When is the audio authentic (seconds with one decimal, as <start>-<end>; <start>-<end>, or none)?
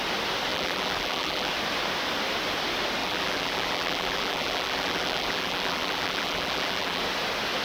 0.0-0.5; 1.5-3.0; 7.0-7.6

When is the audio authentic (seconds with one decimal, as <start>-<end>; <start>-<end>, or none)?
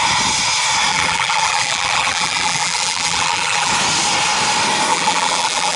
0.0-0.9; 3.7-4.9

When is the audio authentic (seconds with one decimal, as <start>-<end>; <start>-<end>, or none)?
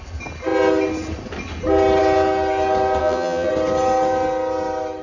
0.0-3.0; 3.5-5.0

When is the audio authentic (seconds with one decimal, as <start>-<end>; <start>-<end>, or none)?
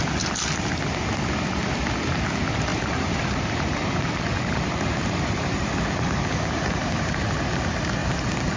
0.0-2.7; 7.4-8.0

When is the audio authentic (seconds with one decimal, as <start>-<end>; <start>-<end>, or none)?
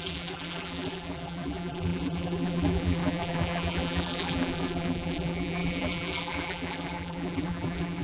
none